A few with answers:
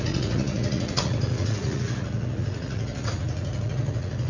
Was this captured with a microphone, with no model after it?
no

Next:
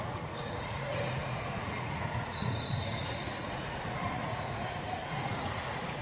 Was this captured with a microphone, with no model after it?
no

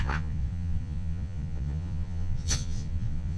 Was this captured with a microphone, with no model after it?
no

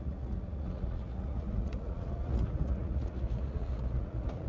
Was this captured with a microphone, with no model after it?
no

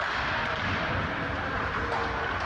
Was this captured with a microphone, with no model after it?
yes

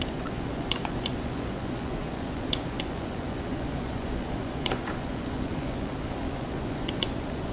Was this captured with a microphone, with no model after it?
no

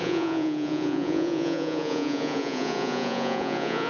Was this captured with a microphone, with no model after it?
no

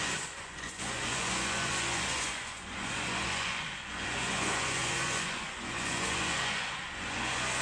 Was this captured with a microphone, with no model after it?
no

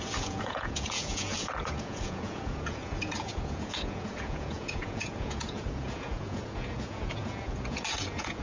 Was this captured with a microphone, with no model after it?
no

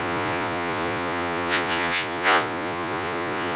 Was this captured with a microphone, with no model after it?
no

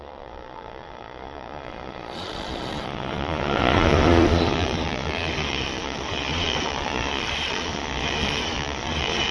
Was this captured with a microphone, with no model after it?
no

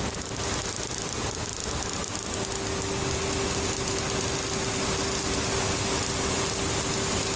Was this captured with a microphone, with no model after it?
yes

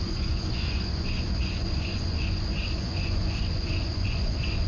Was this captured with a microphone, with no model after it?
no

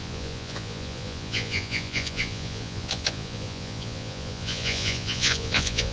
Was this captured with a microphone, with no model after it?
no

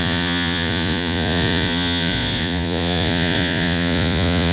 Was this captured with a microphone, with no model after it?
no